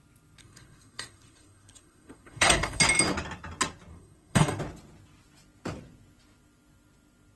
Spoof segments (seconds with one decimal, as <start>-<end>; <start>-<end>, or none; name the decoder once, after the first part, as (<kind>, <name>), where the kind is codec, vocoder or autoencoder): 0.4-2.8 (codec, SNAC); 3.9-4.6